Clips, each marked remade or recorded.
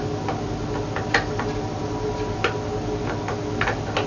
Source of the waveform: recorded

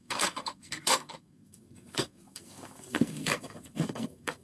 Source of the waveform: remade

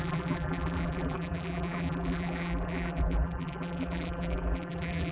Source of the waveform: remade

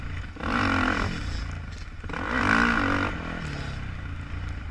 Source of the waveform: recorded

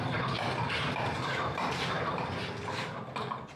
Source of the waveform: recorded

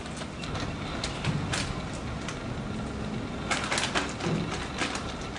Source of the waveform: recorded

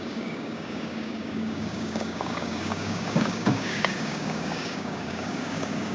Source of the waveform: remade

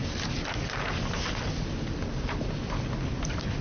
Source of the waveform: recorded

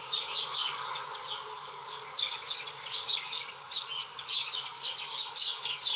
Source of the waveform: remade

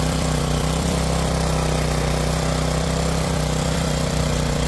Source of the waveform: remade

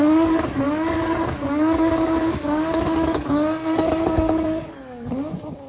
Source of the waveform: remade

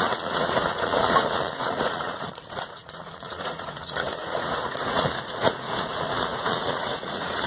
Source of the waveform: remade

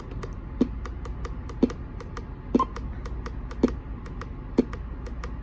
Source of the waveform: recorded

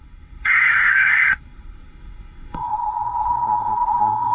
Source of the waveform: remade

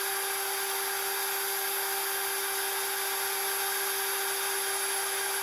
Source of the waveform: recorded